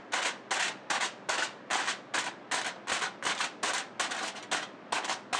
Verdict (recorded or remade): recorded